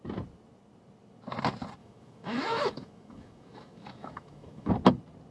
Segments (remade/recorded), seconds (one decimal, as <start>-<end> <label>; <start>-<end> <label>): 0.0-1.8 recorded; 1.8-4.7 remade; 4.7-5.3 recorded